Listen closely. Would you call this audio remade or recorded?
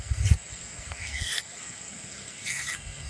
remade